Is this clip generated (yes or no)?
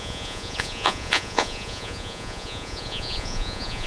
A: yes